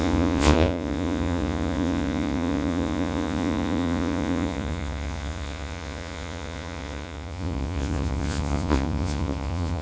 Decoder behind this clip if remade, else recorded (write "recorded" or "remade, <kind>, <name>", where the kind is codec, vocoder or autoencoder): remade, vocoder, Vocos